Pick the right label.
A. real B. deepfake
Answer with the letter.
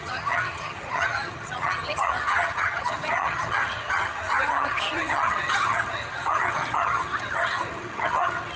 B